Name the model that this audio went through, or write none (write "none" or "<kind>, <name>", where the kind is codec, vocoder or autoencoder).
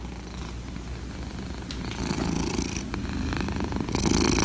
none